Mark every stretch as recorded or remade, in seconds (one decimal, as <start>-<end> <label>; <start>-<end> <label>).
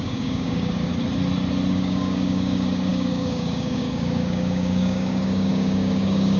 0.0-0.9 remade; 0.9-1.7 recorded; 1.7-6.4 remade